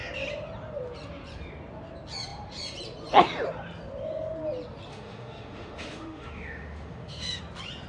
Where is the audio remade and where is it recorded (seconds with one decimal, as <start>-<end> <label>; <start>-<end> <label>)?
0.0-4.9 recorded; 4.9-7.4 remade; 7.4-7.9 recorded